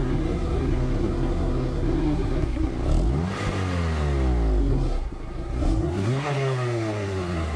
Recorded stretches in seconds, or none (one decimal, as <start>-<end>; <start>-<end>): 2.7-4.6